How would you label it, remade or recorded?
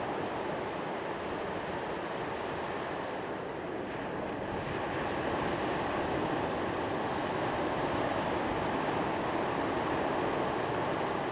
recorded